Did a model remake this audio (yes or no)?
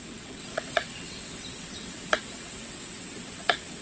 yes